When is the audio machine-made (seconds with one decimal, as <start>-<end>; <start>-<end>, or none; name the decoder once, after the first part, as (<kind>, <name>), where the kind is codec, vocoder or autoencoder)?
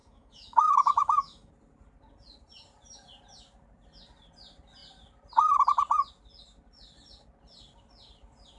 0.0-1.5 (autoencoder, DAC-VAE)